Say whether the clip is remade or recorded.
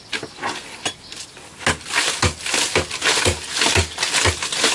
recorded